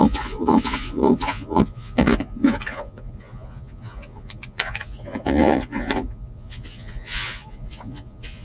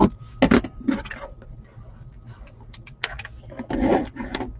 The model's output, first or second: first